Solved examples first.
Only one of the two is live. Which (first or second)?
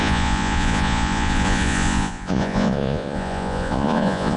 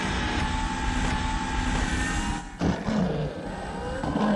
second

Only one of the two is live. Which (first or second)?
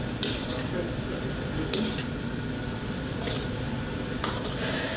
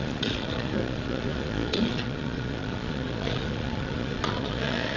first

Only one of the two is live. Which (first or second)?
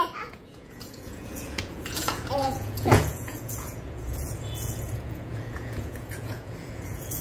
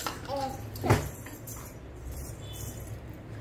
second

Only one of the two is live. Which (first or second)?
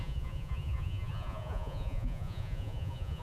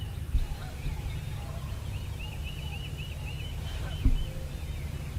second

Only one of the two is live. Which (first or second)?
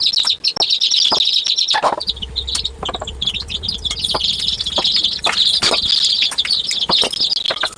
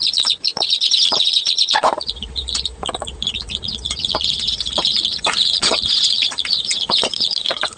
first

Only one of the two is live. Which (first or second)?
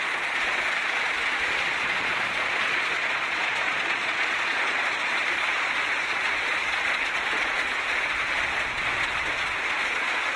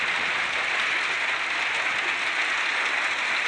second